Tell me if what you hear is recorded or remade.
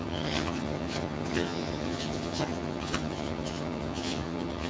remade